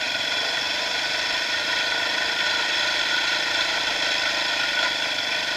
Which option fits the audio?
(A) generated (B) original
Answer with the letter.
B